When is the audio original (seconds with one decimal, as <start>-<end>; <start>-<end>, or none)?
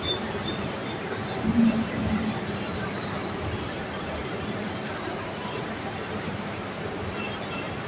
0.8-1.4